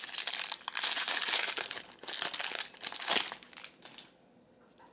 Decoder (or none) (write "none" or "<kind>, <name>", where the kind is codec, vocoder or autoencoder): none